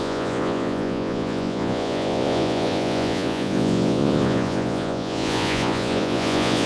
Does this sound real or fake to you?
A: fake